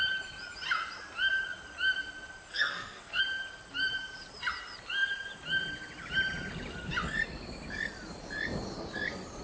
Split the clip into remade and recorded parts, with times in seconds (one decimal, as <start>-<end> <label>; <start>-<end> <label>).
0.0-2.5 recorded; 2.5-3.2 remade; 3.2-9.4 recorded